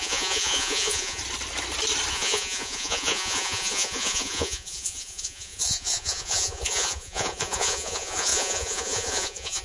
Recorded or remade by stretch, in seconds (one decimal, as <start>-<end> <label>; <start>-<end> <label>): 0.0-1.2 remade; 1.2-2.1 recorded; 2.1-9.6 remade